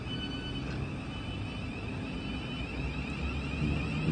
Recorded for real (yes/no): yes